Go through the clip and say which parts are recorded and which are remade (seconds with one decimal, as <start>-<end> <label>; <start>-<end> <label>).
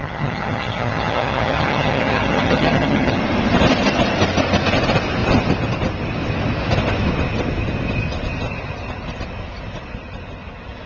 0.0-3.2 remade; 3.2-10.9 recorded